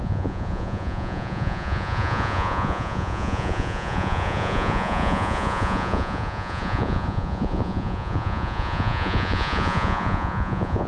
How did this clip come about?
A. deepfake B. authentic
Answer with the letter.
A